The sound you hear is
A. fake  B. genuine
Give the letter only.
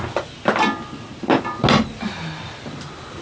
B